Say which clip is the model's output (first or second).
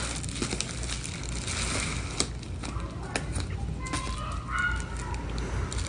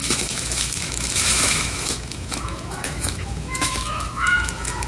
second